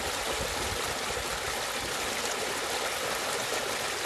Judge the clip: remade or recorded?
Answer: recorded